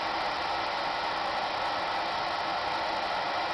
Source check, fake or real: real